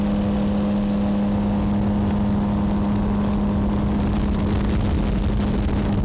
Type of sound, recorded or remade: recorded